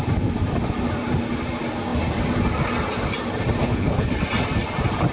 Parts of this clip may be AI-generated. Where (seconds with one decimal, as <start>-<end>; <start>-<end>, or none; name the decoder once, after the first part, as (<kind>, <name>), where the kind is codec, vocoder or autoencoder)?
3.6-4.1 (codec, HILCodec)